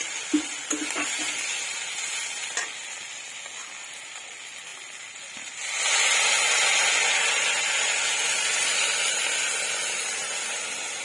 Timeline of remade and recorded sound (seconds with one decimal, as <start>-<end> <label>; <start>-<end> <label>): 0.0-11.0 recorded